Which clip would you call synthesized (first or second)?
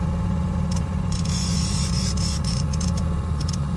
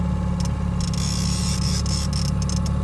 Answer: first